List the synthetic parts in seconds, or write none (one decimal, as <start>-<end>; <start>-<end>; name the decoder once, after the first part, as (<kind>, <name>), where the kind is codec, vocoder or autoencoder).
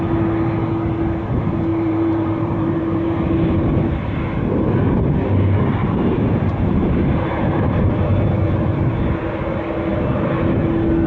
1.7-3.1 (vocoder, BigVGAN v2); 5.8-7.6